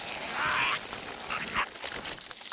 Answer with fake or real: real